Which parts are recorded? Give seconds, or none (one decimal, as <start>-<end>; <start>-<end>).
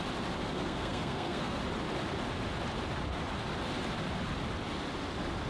0.0-0.4; 1.6-5.5